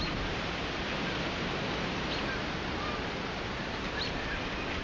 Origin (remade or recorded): recorded